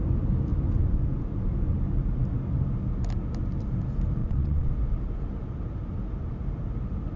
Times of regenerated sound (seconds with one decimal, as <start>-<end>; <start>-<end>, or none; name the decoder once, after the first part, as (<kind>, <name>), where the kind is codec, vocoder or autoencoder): 4.2-4.7 (vocoder, WaveNeXt)